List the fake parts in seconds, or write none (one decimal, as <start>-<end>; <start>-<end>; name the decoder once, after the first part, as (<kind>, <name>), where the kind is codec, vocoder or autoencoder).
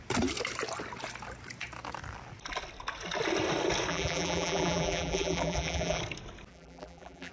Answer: 3.9-6.0 (vocoder, BigVGAN v2); 6.5-7.3